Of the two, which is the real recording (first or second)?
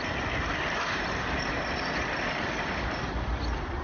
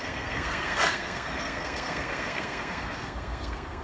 first